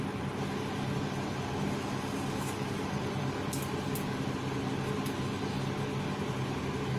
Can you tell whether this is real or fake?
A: real